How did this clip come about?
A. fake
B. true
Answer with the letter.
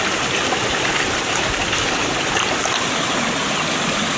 B